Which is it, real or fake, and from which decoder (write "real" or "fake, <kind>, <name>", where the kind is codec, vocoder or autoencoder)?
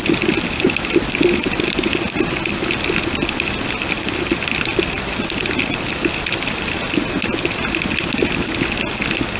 real